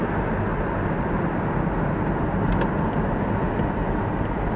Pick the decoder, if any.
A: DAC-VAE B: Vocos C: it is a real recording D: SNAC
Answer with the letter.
C